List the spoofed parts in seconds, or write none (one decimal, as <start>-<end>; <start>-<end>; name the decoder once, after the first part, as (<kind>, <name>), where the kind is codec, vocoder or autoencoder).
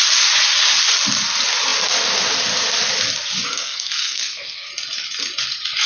3.5-4.7 (codec, SNAC)